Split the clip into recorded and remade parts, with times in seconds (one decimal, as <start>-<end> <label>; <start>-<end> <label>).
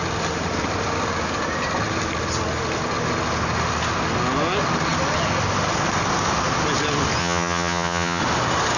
0.0-7.2 recorded; 7.2-8.2 remade; 8.2-8.8 recorded